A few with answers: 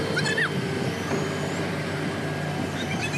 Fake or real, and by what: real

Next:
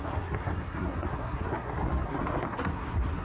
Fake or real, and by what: fake, codec, SNAC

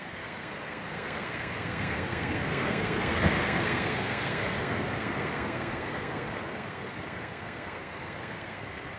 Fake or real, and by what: fake, codec, SNAC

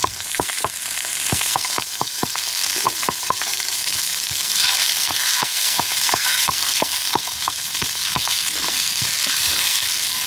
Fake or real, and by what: fake, codec, SNAC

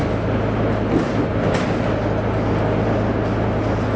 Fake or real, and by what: real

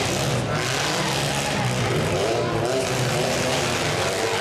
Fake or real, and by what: real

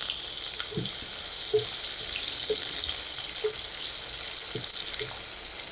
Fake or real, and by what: real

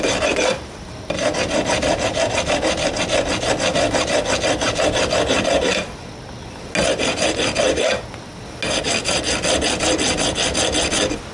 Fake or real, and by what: real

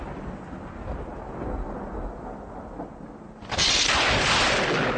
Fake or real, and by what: real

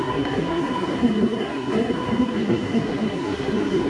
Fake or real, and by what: fake, codec, SNAC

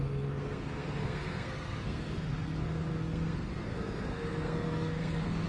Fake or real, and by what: fake, codec, SNAC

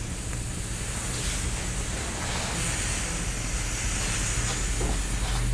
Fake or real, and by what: real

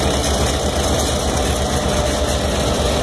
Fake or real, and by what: real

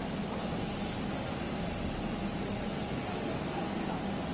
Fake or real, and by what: real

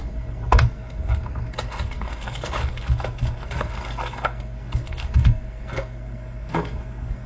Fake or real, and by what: fake, codec, SNAC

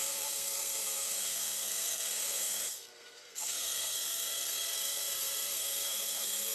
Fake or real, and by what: fake, codec, SNAC